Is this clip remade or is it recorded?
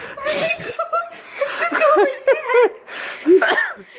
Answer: recorded